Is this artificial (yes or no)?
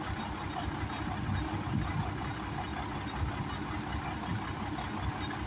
no